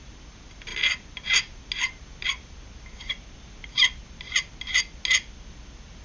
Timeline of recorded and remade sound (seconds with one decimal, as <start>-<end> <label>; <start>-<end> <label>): 0.0-6.0 recorded